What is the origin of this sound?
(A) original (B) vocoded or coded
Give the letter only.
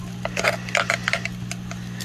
A